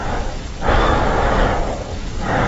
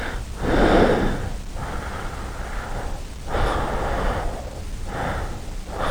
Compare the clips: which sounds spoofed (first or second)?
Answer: first